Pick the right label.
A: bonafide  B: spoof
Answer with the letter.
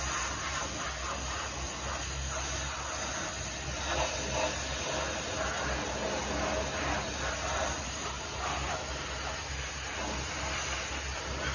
A